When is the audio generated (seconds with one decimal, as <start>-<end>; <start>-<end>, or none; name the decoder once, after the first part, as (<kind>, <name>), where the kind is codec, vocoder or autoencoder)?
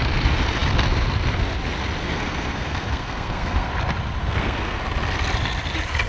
2.0-3.7 (codec, SNAC); 4.2-4.8